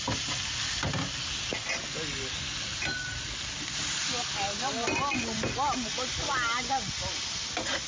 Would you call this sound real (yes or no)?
yes